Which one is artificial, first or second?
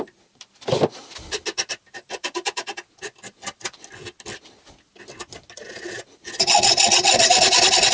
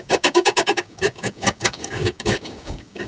second